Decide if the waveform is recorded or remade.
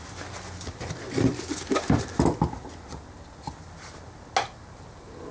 recorded